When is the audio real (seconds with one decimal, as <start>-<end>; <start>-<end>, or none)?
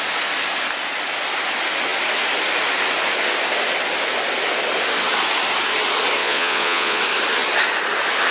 0.0-6.2; 7.0-8.3